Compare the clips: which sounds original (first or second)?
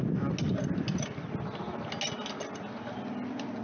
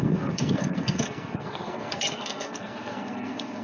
first